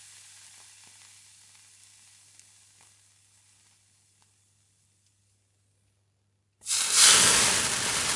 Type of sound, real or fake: real